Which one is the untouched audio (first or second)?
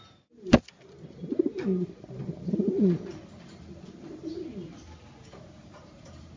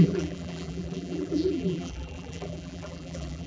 first